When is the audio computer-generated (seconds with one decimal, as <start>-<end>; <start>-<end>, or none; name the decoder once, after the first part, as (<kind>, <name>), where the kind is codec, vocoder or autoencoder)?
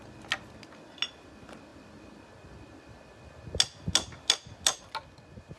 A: none